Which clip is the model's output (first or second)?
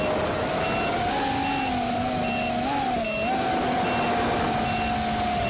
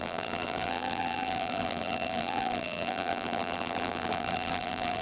second